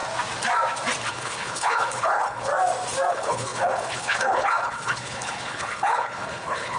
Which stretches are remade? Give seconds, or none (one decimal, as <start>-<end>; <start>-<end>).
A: 1.1-2.5; 3.1-6.8